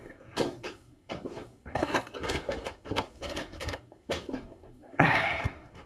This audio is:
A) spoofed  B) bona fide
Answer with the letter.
A